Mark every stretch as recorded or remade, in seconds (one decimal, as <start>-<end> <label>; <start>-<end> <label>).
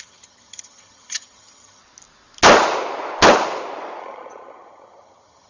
0.0-1.8 remade; 1.8-4.0 recorded; 4.0-5.5 remade